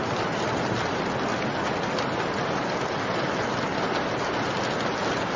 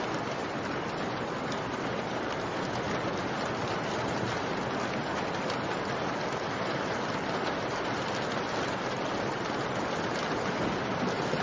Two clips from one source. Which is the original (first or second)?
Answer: first